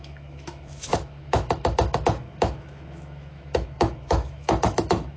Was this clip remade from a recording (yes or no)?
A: yes